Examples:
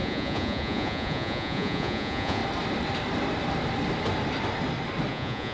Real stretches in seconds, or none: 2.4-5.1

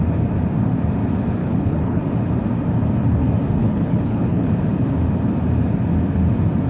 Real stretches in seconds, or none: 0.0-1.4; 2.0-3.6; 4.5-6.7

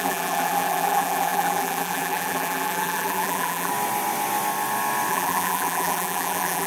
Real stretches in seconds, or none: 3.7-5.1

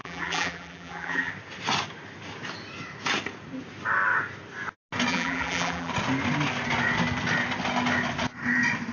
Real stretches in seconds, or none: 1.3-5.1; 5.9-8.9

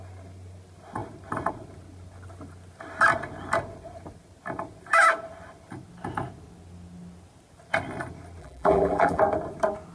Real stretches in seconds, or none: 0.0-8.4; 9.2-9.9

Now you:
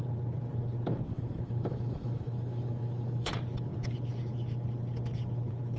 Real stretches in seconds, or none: 0.0-1.1; 3.3-5.8

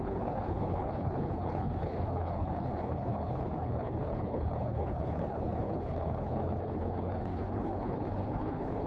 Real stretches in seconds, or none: none